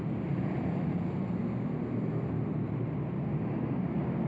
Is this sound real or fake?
real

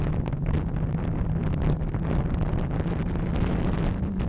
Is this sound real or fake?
real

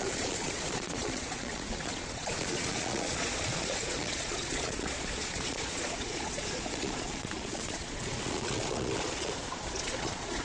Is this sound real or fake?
fake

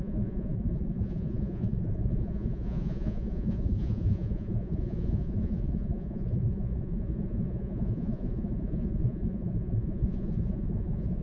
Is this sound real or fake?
fake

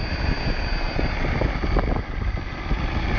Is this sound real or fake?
real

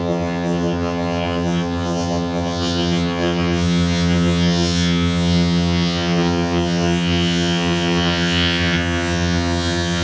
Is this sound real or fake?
fake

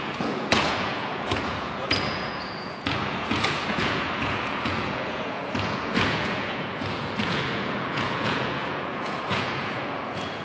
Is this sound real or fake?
fake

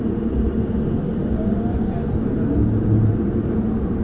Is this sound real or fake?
real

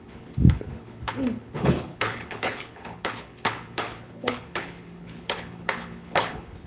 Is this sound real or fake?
fake